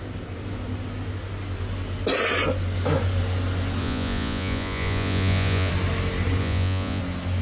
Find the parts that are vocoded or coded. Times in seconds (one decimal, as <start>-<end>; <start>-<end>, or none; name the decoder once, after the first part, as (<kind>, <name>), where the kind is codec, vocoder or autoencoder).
3.8-5.7 (vocoder, Vocos); 6.4-7.0